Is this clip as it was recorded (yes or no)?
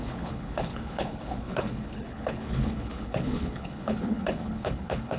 no